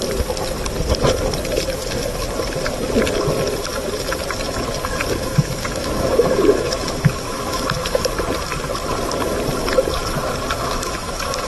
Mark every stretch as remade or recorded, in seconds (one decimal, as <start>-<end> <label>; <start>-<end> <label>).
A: 0.0-5.2 recorded; 5.2-8.0 remade; 8.0-10.6 recorded; 10.6-11.5 remade